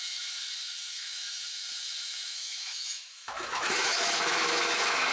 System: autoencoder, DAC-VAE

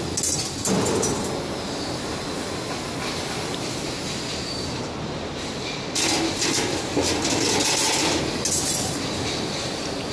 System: none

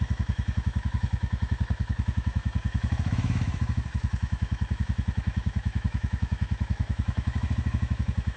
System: autoencoder, DAC-VAE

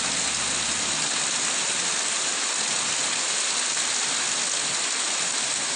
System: none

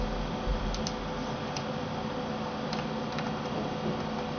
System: none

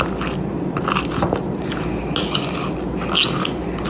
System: none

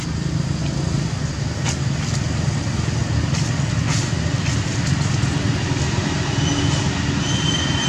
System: none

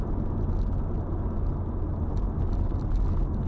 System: none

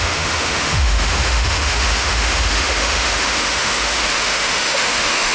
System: autoencoder, DAC-VAE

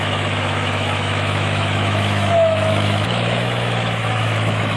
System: autoencoder, DAC-VAE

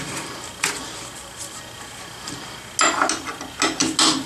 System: none